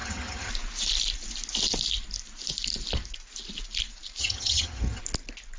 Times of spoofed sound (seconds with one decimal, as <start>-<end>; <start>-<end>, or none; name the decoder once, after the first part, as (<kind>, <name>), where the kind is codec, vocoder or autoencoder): 0.0-0.5 (vocoder, HiFi-GAN); 4.2-5.0